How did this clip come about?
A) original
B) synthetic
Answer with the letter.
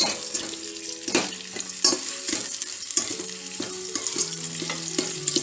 A